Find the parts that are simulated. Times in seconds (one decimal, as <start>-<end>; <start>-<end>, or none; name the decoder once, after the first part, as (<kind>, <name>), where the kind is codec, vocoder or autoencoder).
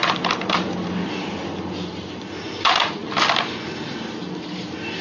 0.0-3.0 (vocoder, BigVGAN v2)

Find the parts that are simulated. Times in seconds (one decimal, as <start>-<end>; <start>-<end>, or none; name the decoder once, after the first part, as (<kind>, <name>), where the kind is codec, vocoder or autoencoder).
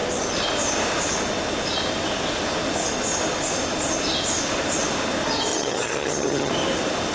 5.5-6.5 (vocoder, HiFi-GAN)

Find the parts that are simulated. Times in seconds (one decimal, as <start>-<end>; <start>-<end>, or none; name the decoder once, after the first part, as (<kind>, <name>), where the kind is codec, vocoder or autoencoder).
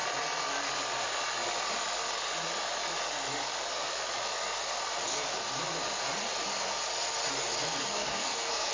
7.8-8.7 (codec, SNAC)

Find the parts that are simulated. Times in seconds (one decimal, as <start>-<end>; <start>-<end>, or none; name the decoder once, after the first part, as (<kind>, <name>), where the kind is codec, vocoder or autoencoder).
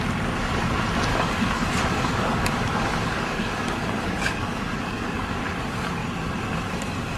1.1-5.4 (codec, DAC)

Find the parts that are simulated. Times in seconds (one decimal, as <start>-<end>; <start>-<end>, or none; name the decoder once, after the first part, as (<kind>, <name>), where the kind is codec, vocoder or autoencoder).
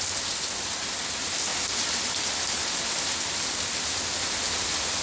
none